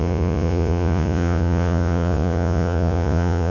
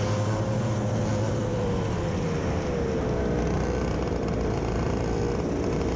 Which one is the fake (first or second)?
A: first